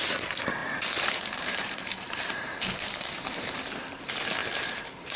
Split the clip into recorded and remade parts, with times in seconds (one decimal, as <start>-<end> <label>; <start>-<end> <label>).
0.0-0.6 recorded; 0.6-3.7 remade; 3.7-4.4 recorded; 4.4-5.2 remade